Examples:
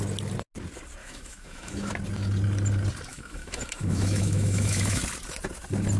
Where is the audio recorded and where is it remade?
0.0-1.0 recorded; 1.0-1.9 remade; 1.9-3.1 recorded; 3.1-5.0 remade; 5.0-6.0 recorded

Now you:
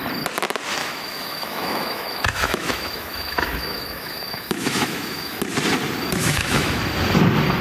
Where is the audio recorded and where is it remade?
0.0-0.8 recorded; 0.8-5.4 remade; 5.4-6.2 recorded; 6.2-6.8 remade; 6.8-7.6 recorded